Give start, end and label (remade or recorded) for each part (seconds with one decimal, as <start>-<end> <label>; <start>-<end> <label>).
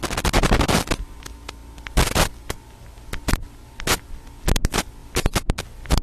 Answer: 0.0-6.0 recorded